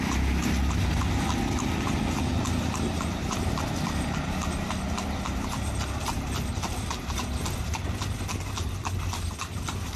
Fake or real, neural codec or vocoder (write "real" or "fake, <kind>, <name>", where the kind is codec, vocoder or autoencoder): real